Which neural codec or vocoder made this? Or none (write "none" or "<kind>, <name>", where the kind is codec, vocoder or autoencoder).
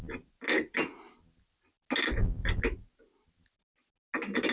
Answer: none